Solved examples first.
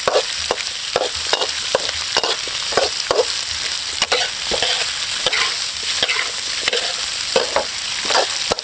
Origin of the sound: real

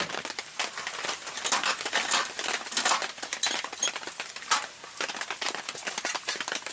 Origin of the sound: real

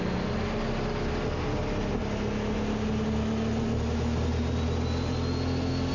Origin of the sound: real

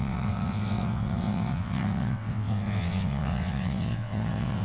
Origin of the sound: fake